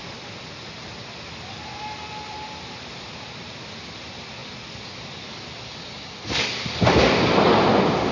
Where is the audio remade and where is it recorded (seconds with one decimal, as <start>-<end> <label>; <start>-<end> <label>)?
0.0-8.1 recorded